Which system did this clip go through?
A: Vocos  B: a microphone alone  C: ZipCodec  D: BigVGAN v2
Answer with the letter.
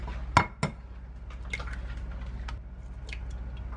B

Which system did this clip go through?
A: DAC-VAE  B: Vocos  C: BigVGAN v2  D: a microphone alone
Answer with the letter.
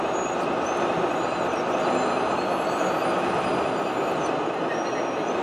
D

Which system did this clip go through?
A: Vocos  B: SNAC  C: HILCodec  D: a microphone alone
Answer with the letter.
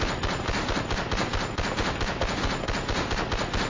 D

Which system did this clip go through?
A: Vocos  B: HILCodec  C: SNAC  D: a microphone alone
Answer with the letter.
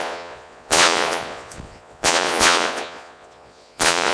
A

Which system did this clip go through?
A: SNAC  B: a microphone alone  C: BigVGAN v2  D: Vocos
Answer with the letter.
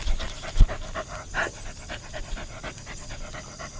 B